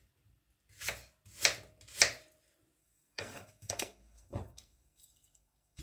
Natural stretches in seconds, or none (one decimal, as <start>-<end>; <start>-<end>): 0.0-2.8